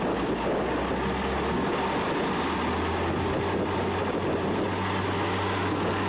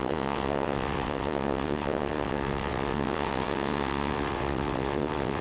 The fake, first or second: second